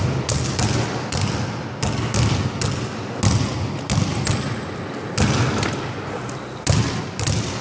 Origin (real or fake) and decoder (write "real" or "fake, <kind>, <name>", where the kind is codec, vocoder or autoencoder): real